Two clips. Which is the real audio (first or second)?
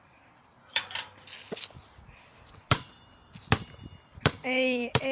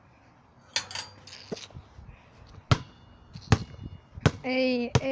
second